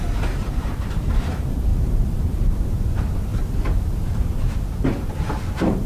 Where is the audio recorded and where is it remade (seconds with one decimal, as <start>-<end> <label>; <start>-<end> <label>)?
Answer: 0.0-3.3 remade; 3.3-4.3 recorded; 4.3-5.9 remade